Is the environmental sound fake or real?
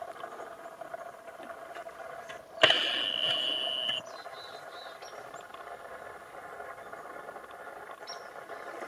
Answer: real